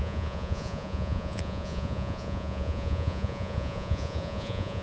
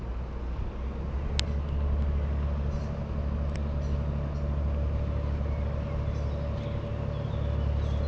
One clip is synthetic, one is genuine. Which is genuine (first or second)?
second